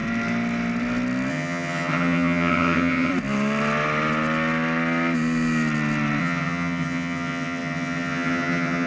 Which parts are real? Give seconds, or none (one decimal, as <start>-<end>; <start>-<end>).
0.0-1.3; 3.1-6.2